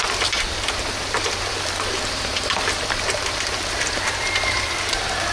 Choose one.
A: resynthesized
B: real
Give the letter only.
A